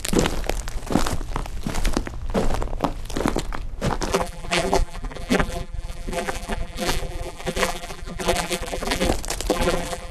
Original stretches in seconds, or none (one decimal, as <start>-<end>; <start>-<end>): 0.0-4.1; 9.1-9.5